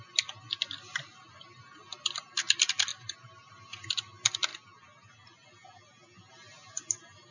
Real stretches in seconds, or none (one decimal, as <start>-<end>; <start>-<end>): 0.0-2.9; 3.5-7.3